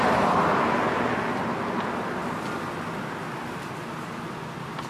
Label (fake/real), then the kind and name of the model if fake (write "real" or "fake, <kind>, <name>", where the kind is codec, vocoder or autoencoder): real